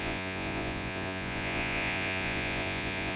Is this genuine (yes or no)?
no